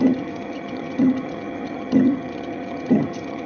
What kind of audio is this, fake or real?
fake